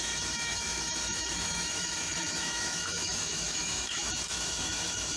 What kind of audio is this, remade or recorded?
remade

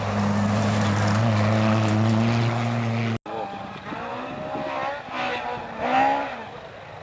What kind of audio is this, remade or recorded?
recorded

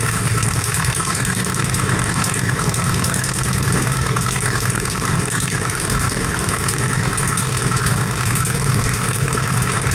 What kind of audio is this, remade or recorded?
remade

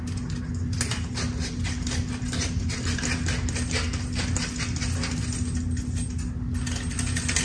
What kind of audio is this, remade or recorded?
recorded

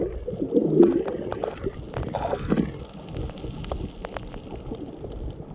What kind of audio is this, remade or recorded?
recorded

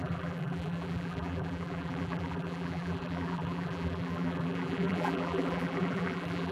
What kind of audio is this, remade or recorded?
remade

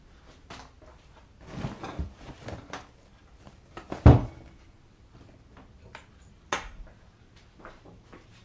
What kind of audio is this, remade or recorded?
recorded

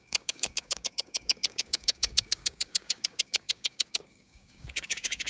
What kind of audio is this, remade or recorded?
remade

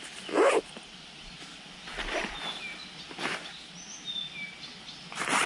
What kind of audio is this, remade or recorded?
recorded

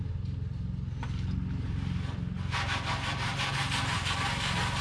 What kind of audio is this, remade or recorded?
recorded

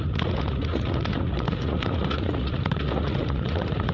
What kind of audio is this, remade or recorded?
remade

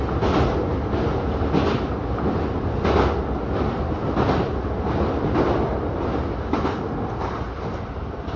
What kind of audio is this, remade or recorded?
recorded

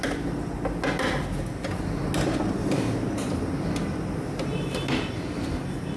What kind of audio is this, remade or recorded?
recorded